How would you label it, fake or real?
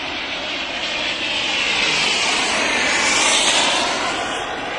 real